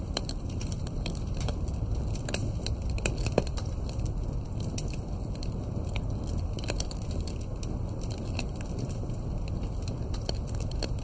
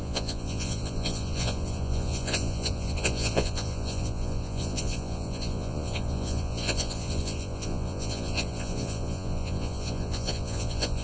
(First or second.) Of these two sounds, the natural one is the first